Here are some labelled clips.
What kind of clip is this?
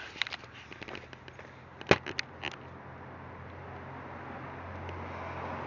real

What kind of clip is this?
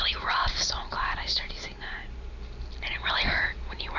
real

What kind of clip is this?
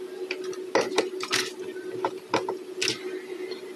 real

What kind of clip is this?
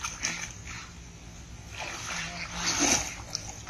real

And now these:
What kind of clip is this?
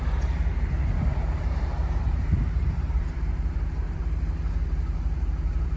fake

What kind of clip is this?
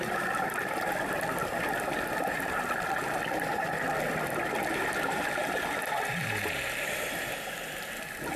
real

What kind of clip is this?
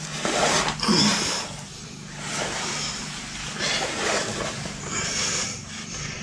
real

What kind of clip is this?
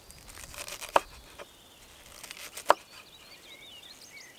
real